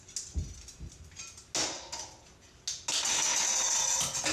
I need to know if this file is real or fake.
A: real